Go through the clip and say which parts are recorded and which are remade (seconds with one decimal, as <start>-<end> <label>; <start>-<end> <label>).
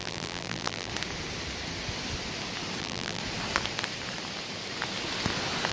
0.0-0.9 remade; 0.9-2.8 recorded; 2.8-3.2 remade; 3.2-5.7 recorded